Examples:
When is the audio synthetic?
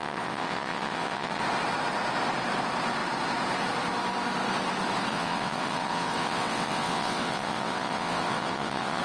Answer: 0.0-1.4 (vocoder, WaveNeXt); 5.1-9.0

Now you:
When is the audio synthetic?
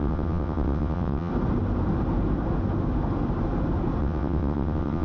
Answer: 0.0-1.3 (vocoder, WaveNeXt); 4.0-5.0